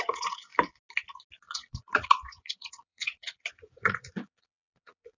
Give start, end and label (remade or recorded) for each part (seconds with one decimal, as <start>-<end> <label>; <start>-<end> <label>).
0.0-0.5 remade; 0.5-1.4 recorded; 1.4-5.2 remade